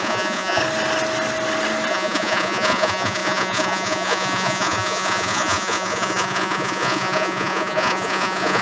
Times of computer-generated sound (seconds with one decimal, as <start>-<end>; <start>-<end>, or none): 0.0-0.6; 1.9-8.6